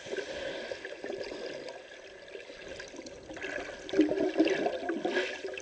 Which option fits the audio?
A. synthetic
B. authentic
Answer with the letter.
B